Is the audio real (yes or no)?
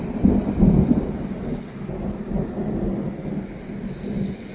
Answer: yes